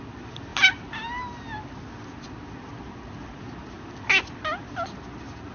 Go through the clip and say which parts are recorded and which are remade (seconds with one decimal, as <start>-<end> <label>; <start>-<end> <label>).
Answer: 0.0-5.5 recorded